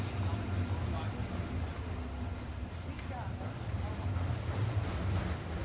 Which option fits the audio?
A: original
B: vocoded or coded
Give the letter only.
A